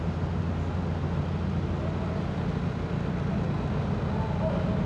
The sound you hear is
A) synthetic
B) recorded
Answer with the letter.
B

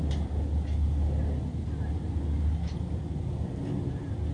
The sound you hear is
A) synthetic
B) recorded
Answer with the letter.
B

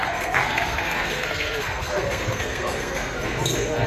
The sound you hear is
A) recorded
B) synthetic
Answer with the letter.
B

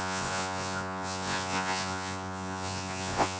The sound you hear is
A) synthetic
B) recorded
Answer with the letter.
A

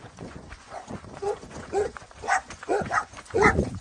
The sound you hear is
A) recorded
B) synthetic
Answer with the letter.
B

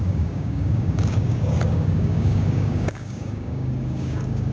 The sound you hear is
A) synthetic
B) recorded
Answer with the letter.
A